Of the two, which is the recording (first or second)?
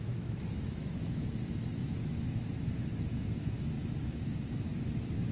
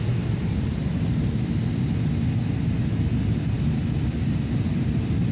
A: second